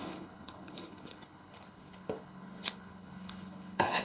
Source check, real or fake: fake